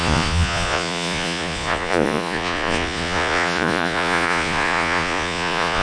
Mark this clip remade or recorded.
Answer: remade